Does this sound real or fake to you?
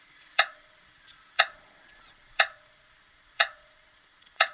fake